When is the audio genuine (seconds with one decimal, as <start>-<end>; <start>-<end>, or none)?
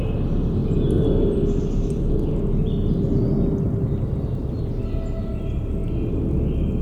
0.0-6.8